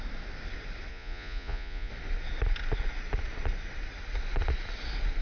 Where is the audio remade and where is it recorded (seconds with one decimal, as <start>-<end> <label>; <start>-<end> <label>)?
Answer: 0.0-0.9 recorded; 0.9-1.9 remade; 1.9-5.2 recorded